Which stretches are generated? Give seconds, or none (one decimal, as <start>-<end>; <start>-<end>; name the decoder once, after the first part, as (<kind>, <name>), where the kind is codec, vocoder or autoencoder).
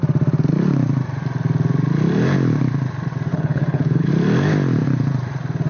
3.3-4.1 (codec, HILCodec)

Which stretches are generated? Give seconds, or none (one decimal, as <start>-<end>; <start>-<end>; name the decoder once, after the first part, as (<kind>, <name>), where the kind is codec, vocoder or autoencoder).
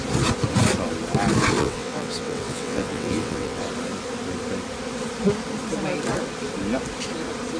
1.6-3.6 (vocoder, WaveNeXt)